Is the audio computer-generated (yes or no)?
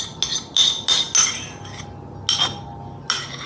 no